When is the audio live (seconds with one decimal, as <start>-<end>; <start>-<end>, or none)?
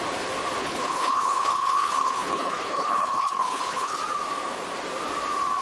0.0-0.6; 4.0-5.6